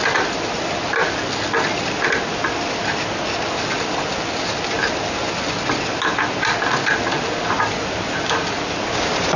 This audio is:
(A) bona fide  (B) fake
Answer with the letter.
A